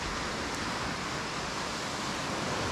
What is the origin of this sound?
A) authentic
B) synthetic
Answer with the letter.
A